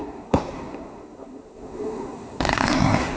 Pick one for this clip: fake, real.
fake